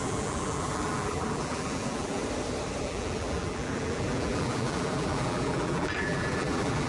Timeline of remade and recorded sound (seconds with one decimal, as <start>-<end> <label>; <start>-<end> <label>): 0.0-2.2 remade; 2.2-2.8 recorded; 2.8-6.9 remade

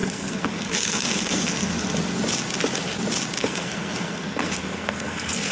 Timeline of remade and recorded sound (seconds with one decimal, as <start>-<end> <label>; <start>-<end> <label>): 0.0-1.7 remade; 1.7-3.4 recorded; 3.4-5.5 remade

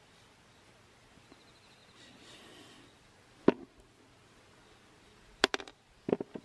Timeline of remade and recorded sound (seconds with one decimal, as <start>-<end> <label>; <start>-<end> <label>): 0.0-6.4 recorded

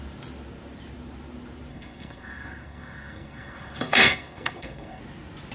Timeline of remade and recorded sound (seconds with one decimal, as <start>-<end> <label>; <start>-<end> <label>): 0.0-1.7 recorded; 1.7-5.0 remade; 5.0-5.5 recorded